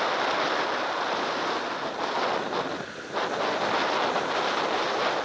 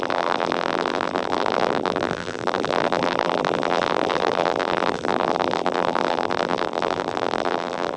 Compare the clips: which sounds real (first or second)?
first